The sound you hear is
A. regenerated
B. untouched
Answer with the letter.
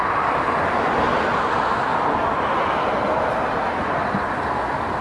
B